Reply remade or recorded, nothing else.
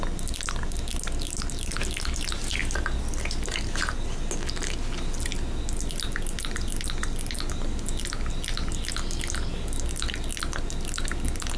recorded